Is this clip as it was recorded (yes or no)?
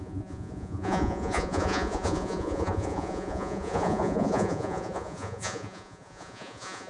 no